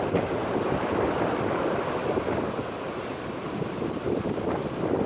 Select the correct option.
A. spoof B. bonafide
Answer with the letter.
A